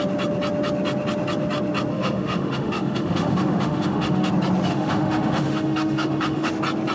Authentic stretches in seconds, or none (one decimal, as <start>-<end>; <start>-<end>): 0.0-1.9; 4.3-4.7; 6.5-6.9